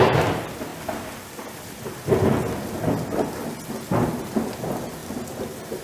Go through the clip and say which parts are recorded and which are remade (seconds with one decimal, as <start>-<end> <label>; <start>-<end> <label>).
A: 0.0-5.8 recorded